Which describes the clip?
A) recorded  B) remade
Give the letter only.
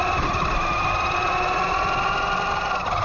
A